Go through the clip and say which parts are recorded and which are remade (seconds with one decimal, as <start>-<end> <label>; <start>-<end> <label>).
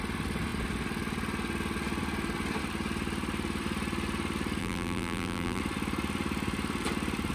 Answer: 0.0-4.6 recorded; 4.6-5.6 remade; 5.6-7.3 recorded